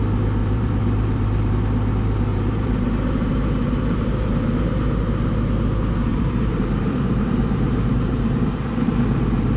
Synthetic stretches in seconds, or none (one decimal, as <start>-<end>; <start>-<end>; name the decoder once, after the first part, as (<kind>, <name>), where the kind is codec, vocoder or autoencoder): 0.4-1.5 (vocoder, BigVGAN v2); 2.3-4.8; 6.1-9.6